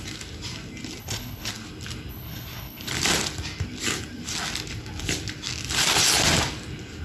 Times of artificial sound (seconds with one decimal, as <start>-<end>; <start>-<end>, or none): 1.0-1.5; 2.1-2.9